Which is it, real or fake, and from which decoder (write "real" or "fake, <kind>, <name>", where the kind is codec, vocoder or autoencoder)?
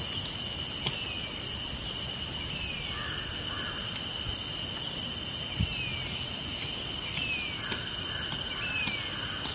real